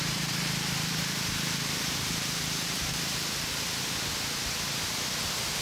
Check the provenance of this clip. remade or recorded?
remade